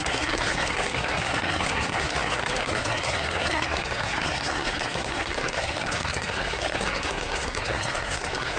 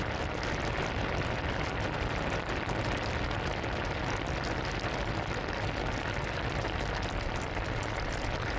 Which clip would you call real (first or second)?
second